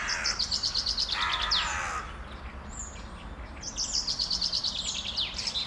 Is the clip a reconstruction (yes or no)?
no